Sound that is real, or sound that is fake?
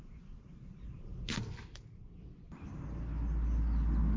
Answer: real